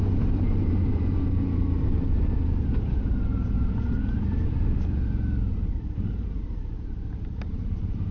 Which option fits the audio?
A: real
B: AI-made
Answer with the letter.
B